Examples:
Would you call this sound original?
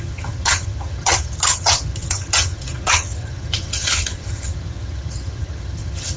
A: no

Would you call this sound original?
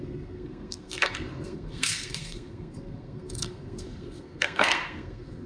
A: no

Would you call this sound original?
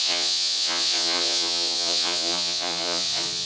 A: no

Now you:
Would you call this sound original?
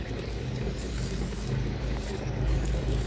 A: no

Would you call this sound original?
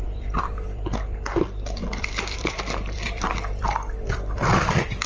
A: no